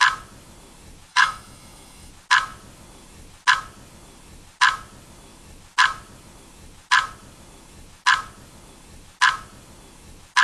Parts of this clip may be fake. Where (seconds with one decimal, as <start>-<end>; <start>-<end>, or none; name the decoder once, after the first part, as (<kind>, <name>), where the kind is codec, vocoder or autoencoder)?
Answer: 1.1-2.1 (autoencoder, DAC-VAE)